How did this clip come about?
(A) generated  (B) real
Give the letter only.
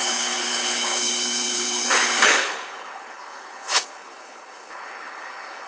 A